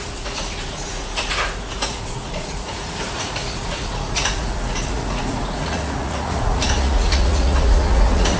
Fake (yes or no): yes